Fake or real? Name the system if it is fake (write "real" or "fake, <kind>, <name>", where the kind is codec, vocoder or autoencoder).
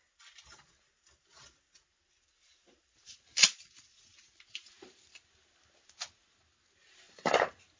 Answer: real